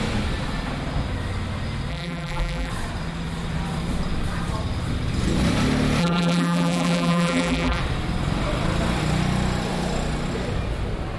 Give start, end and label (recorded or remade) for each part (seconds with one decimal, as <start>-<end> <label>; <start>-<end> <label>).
0.0-1.9 recorded; 1.9-2.7 remade; 2.7-6.0 recorded; 6.0-7.8 remade; 7.8-11.2 recorded